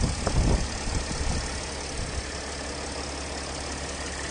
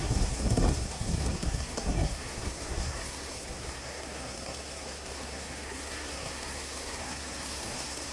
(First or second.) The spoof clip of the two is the second